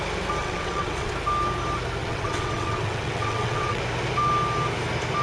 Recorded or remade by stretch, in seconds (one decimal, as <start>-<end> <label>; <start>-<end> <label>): 0.0-0.4 recorded; 0.4-1.1 remade; 1.1-2.0 recorded; 2.0-3.8 remade; 3.8-5.2 recorded